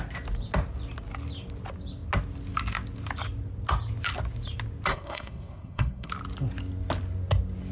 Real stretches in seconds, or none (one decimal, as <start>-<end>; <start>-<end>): 0.0-4.9; 6.1-7.7